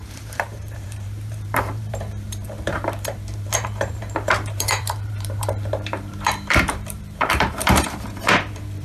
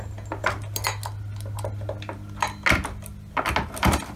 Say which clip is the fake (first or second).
first